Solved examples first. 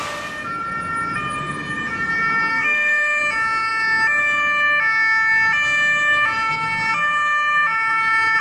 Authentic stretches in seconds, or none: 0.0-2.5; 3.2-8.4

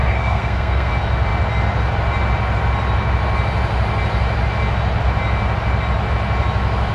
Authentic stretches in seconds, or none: 0.9-6.9

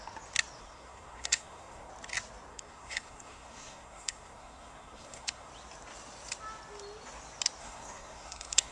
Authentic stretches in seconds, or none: 0.0-0.6; 1.9-2.5; 5.5-7.6

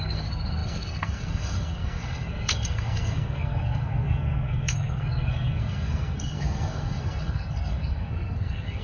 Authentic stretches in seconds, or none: none

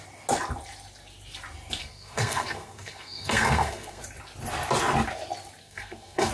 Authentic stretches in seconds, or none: 0.0-1.8; 4.0-5.6